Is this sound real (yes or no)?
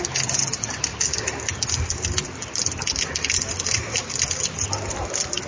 yes